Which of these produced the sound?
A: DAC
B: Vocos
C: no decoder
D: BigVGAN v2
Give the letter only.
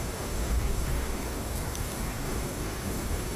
A